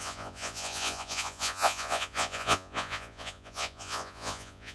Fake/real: fake